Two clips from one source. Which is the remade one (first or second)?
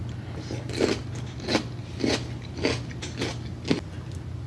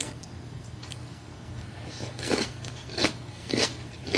second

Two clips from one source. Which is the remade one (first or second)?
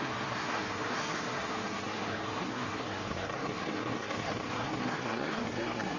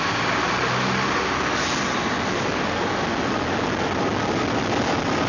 first